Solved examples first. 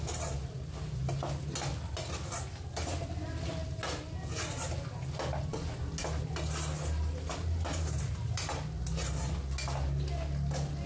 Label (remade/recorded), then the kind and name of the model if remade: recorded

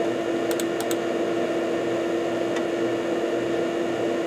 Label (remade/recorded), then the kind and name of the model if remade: recorded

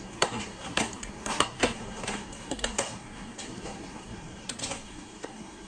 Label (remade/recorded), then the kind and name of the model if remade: remade, codec, SNAC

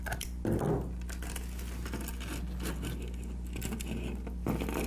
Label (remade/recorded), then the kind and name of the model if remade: recorded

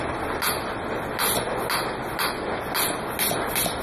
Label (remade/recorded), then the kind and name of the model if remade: recorded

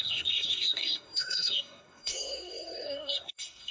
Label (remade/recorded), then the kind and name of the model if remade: remade, codec, SNAC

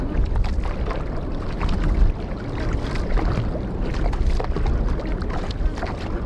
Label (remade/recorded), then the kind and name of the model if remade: recorded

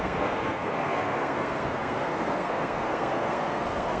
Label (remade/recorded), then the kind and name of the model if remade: remade, codec, SNAC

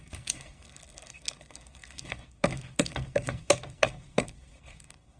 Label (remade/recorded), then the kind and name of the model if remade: remade, codec, SNAC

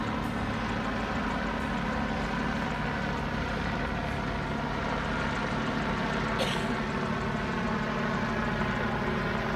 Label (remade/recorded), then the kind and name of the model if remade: recorded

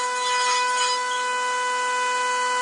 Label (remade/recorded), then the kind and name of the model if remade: recorded